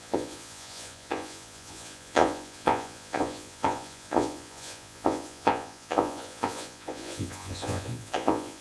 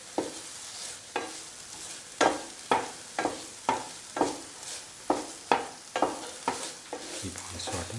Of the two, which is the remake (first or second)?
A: first